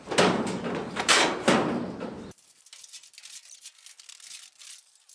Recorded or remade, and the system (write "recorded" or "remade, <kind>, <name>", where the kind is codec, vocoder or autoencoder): recorded